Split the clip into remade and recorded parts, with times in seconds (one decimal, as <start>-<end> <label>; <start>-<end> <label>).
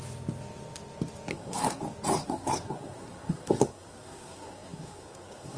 0.0-1.3 recorded; 1.3-1.8 remade; 1.8-2.2 recorded; 2.2-5.6 remade